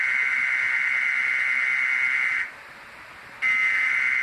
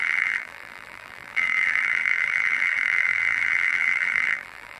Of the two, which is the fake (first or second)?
second